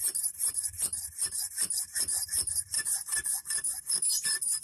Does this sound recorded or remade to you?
recorded